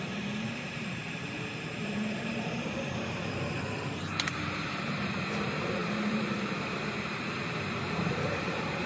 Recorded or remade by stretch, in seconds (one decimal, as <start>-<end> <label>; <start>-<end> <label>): 0.0-8.9 remade